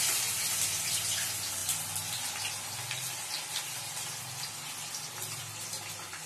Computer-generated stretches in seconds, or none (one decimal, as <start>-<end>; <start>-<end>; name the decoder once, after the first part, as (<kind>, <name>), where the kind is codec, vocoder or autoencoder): none